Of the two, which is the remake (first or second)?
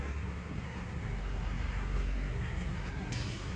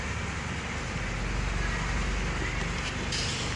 first